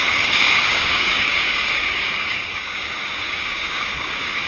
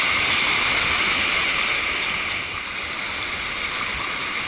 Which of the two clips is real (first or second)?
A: second